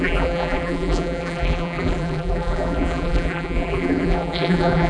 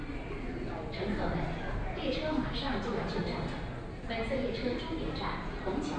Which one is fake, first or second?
first